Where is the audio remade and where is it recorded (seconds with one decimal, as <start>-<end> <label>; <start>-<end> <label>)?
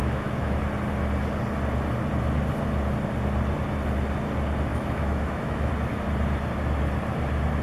0.0-0.6 remade; 0.6-4.7 recorded; 4.7-5.7 remade; 5.7-7.6 recorded